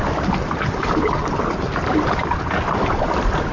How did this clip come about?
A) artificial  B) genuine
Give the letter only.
B